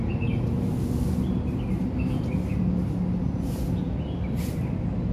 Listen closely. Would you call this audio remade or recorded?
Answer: recorded